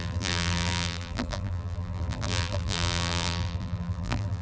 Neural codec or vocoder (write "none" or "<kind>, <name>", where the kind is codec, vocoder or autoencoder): vocoder, BigVGAN v2